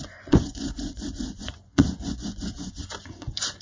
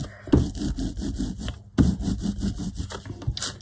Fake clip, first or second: first